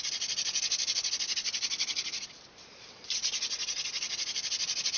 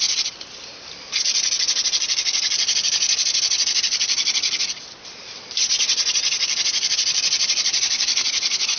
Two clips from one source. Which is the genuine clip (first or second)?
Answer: first